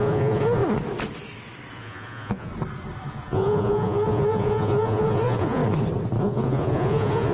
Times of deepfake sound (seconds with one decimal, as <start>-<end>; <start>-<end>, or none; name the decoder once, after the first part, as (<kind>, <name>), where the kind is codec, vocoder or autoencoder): 0.0-0.6 (vocoder, Vocos); 1.7-2.5; 3.1-5.6; 6.2-7.3